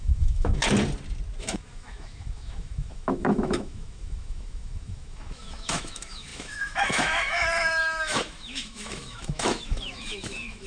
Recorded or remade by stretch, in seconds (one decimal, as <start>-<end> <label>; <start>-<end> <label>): 0.0-0.6 remade; 0.6-1.4 recorded; 1.4-10.7 remade